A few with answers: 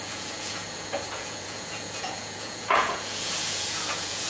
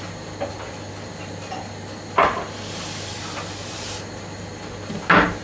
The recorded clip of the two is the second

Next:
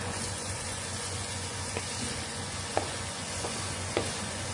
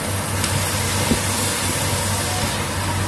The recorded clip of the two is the second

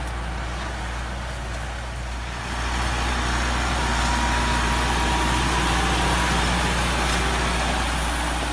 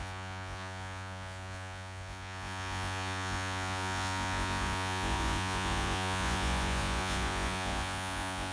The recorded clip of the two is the first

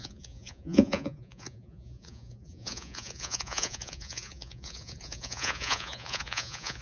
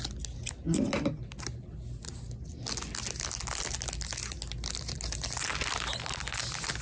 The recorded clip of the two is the second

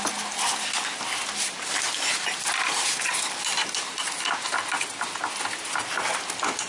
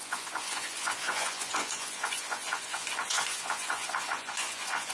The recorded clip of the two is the first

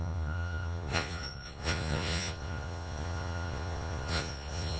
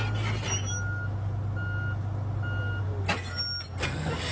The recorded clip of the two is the second